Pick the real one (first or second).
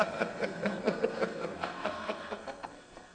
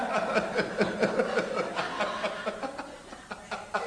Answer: second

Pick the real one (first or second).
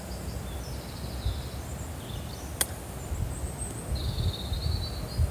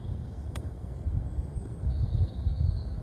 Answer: first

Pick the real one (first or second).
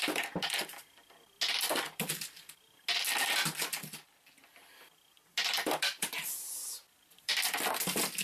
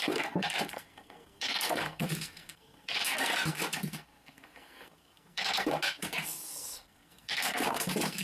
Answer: first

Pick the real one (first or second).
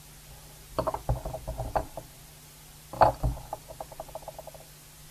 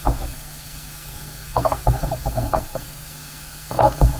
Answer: first